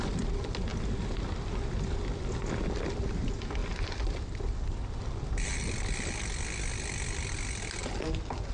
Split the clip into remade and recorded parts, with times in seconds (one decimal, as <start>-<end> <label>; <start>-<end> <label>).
0.0-8.5 recorded